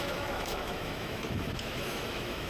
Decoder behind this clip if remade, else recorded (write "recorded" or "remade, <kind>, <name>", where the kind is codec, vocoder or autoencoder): remade, autoencoder, DAC-VAE